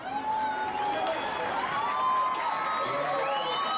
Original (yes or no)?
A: yes